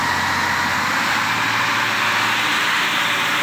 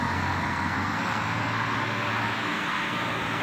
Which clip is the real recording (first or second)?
first